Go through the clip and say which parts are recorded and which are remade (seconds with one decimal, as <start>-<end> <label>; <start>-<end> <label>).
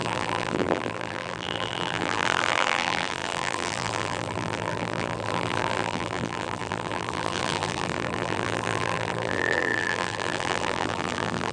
0.0-11.5 remade